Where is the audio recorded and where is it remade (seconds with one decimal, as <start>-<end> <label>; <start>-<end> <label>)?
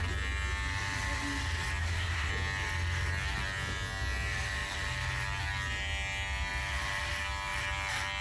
0.0-1.8 recorded; 1.8-2.3 remade; 2.3-8.2 recorded